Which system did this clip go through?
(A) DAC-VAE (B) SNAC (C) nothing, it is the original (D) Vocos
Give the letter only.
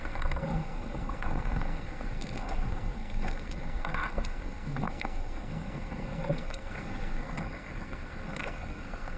B